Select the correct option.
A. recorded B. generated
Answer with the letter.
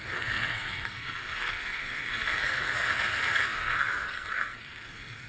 B